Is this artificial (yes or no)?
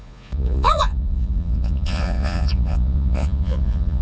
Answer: yes